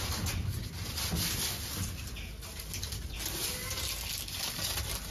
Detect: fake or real real